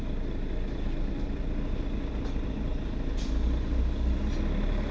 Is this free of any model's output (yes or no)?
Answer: yes